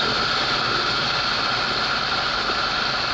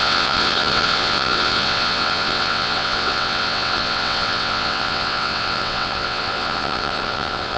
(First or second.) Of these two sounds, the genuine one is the first